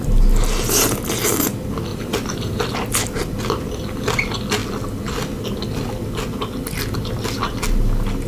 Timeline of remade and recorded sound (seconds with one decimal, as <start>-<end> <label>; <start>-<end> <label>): 0.0-1.9 recorded; 1.9-2.6 remade; 2.6-8.3 recorded